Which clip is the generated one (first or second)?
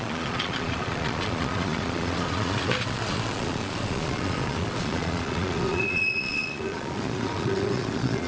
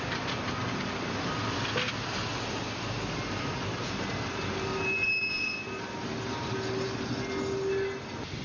first